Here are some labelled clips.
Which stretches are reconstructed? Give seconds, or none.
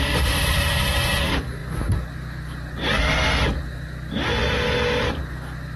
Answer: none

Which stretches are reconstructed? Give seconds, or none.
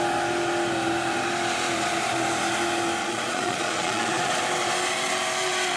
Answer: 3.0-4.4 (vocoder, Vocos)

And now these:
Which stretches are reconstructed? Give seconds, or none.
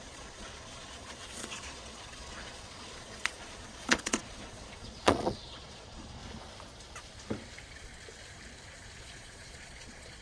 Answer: 0.0-6.2 (vocoder, Vocos); 9.0-10.2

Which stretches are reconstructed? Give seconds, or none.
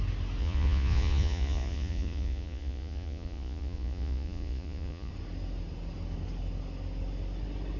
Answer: 0.4-5.1 (vocoder, Vocos)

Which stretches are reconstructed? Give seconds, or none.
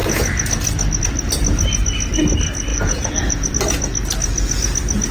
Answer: 2.7-3.5 (vocoder, Vocos)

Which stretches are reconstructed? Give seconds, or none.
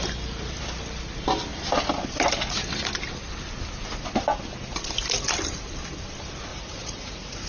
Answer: 6.5-7.5 (vocoder, Vocos)